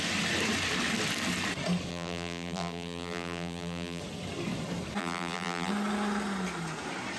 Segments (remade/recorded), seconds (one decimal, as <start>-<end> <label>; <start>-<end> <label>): 0.0-1.9 recorded; 1.9-4.0 remade; 4.0-5.0 recorded; 5.0-5.7 remade; 5.7-7.2 recorded